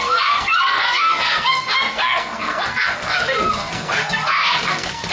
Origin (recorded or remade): remade